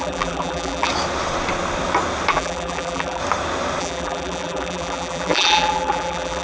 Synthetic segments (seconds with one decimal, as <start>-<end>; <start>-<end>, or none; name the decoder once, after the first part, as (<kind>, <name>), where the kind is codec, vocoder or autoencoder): 0.0-0.9 (vocoder, BigVGAN v2); 2.3-3.2; 3.8-6.4